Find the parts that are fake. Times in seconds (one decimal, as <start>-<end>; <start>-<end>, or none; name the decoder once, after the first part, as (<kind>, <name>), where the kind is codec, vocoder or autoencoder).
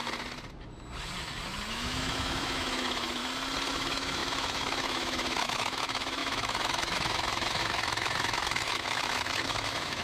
1.7-3.2 (autoencoder, DAC-VAE); 3.7-10.0